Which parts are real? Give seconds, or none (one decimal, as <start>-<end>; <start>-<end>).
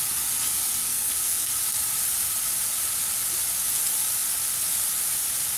0.0-0.8; 1.5-5.6